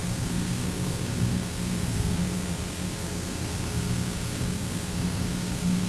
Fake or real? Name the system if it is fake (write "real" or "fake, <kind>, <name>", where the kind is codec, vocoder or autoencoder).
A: fake, codec, SNAC